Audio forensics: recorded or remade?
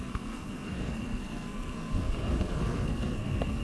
remade